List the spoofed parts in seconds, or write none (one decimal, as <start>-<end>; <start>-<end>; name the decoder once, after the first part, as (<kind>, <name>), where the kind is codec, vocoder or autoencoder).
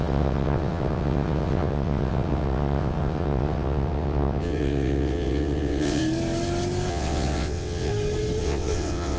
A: 0.0-6.0 (vocoder, WaveNeXt); 6.9-7.9; 8.4-9.2